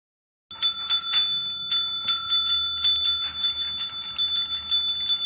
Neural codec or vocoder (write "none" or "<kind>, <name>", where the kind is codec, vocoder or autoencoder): none